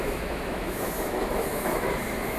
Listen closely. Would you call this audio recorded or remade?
remade